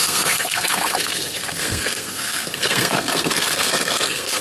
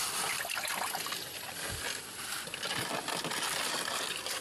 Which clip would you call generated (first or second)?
first